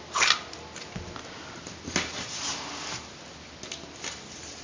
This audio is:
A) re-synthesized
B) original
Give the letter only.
B